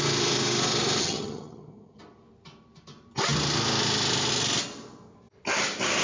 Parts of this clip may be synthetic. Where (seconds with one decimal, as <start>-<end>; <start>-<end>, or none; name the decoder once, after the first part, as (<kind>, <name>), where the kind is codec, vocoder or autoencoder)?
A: 1.0-2.0 (vocoder, HiFi-GAN)